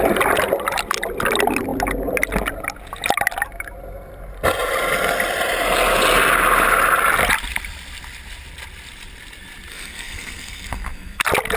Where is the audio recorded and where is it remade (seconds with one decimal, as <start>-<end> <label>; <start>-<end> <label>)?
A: 0.0-9.7 recorded; 9.7-11.2 remade; 11.2-11.6 recorded